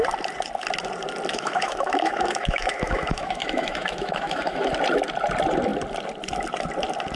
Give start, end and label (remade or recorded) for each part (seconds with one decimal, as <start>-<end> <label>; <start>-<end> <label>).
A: 0.0-1.3 recorded; 1.3-4.7 remade; 4.7-7.2 recorded